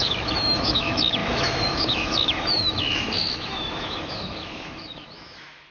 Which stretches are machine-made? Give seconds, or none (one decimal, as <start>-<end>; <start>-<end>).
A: 0.0-5.7